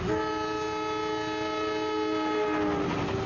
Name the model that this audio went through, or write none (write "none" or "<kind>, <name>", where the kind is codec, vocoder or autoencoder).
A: none